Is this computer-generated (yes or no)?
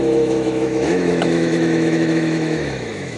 yes